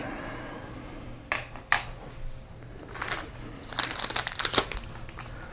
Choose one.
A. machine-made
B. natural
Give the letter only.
B